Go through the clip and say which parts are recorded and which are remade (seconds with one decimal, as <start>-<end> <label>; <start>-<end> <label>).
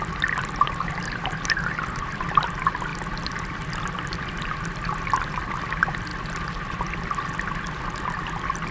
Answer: 0.0-8.7 recorded